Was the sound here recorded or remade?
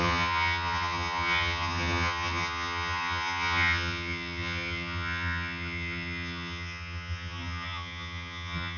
remade